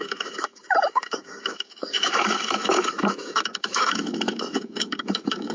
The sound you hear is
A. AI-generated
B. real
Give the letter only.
A